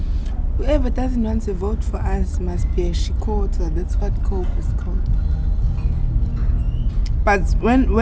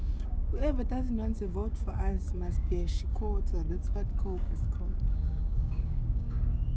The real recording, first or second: first